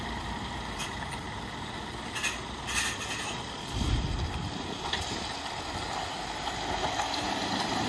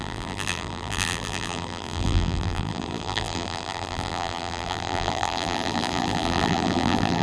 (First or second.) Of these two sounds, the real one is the first